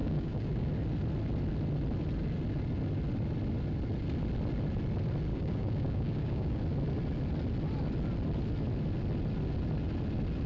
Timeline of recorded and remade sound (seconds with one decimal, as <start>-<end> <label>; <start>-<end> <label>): 0.0-0.7 remade; 0.7-5.3 recorded; 5.3-6.6 remade; 6.6-10.5 recorded